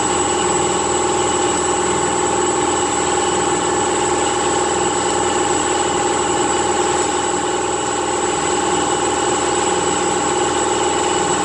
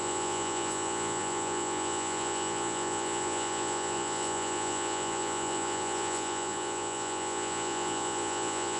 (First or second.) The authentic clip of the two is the first